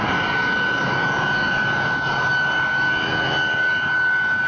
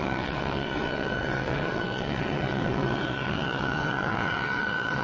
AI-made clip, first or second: second